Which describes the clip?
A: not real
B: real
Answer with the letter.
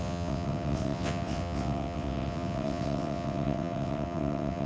A